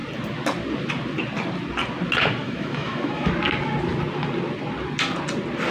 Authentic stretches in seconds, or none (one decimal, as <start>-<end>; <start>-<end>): 0.0-2.4; 3.3-5.7